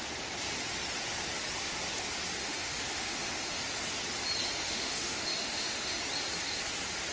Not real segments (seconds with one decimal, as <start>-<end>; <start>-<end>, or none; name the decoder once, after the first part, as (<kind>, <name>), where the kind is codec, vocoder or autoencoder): 2.4-3.6 (autoencoder, DAC-VAE); 4.6-6.0